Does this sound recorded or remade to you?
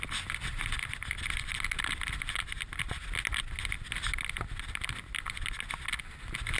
recorded